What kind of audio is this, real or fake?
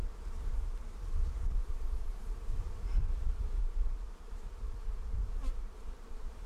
fake